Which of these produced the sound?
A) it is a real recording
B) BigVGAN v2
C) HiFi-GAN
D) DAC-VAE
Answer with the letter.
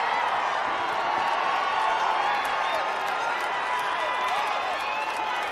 A